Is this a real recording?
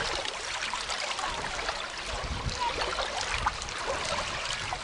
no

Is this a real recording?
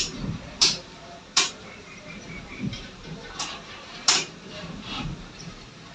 no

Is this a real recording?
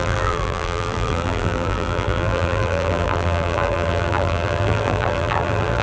no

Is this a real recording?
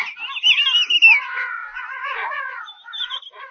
yes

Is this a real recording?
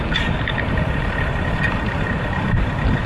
no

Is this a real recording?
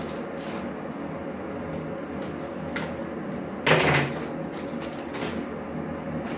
yes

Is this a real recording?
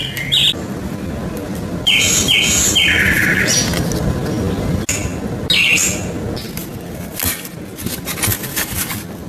yes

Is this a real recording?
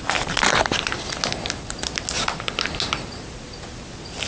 yes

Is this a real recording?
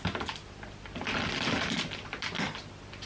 yes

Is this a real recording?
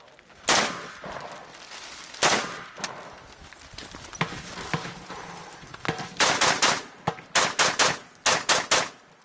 yes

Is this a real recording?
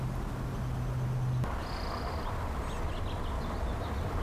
yes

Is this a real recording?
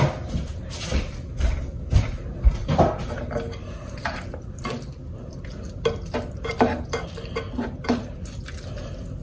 yes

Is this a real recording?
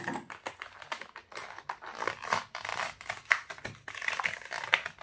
yes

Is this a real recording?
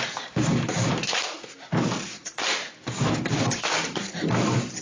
no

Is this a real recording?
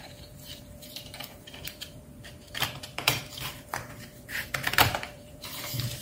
no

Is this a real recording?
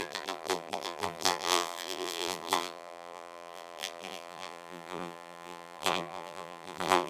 no